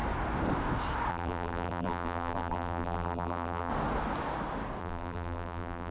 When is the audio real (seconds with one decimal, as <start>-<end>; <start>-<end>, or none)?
0.0-1.1; 3.7-4.8